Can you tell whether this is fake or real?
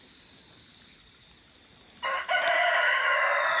real